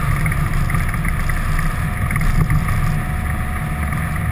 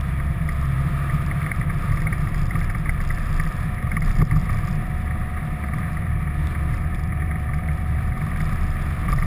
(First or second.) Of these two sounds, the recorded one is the first